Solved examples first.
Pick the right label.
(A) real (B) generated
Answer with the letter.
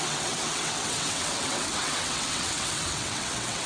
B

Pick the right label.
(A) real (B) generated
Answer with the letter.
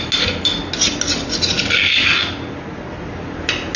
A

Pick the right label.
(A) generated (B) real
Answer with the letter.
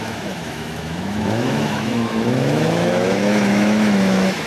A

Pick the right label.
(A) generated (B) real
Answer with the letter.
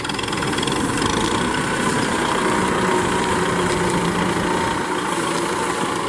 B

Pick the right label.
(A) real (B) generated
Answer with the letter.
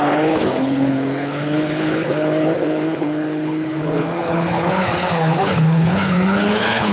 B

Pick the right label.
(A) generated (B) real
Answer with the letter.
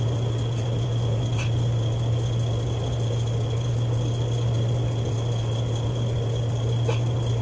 B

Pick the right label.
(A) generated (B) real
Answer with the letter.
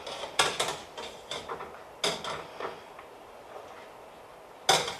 B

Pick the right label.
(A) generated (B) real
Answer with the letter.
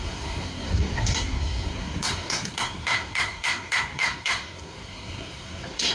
A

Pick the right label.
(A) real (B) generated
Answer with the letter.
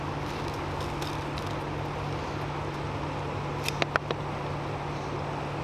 A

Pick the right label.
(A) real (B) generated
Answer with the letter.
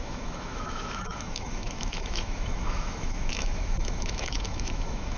B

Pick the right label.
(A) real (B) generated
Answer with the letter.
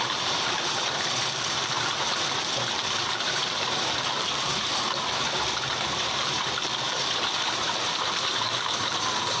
B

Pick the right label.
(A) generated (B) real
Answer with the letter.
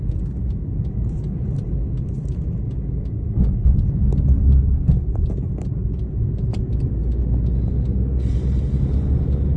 B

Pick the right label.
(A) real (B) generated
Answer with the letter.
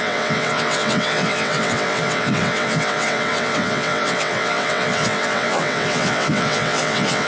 B